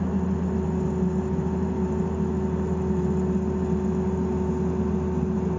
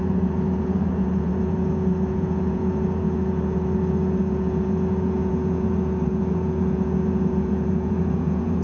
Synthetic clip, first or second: second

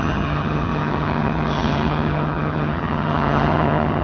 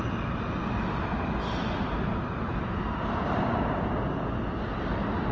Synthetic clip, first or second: first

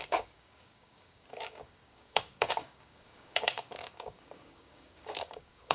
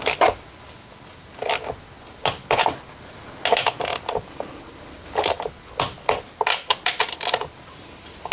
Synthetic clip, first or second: first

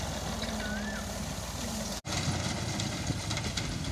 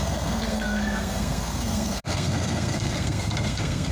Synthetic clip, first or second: second